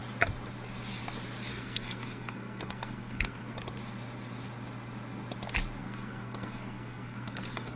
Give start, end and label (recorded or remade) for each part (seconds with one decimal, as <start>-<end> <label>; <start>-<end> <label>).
0.0-1.5 recorded; 1.5-3.6 remade; 3.6-5.8 recorded; 5.8-7.8 remade